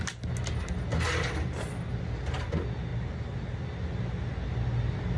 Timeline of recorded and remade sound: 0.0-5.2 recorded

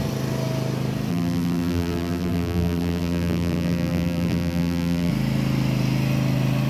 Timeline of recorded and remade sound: 0.0-1.1 recorded; 1.1-5.1 remade; 5.1-6.7 recorded

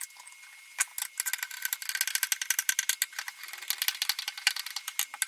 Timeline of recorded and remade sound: 0.0-5.3 recorded

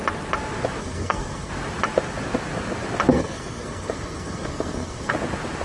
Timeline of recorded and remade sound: 0.0-0.8 recorded; 0.8-1.5 remade; 1.5-3.1 recorded; 3.1-5.1 remade; 5.1-5.6 recorded